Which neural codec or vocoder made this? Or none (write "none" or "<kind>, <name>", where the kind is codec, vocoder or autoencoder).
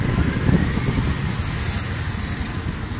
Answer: none